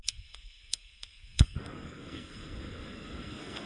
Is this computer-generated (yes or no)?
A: yes